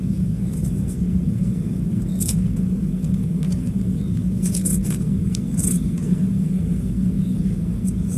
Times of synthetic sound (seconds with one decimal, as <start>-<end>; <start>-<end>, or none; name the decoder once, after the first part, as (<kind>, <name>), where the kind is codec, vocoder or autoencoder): 0.0-8.2 (codec, SNAC)